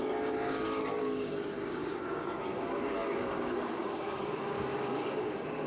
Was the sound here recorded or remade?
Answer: remade